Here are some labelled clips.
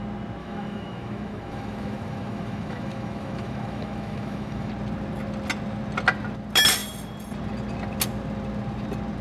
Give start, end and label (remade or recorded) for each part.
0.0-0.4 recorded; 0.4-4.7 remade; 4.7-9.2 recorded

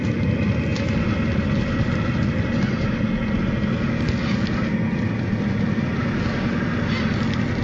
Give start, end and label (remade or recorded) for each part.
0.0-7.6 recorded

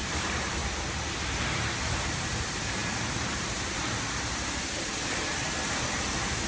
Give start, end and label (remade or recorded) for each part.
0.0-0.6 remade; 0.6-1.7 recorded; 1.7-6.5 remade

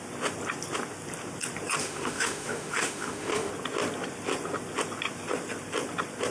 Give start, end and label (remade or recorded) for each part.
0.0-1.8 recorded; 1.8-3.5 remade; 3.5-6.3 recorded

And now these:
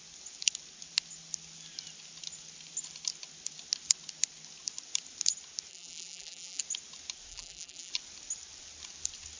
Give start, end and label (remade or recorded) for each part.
0.0-5.7 recorded; 5.7-6.6 remade; 6.6-7.3 recorded; 7.3-7.9 remade; 7.9-9.4 recorded